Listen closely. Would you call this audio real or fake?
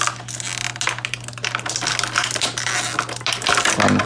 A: real